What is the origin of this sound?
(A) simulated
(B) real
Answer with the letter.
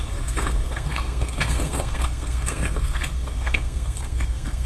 A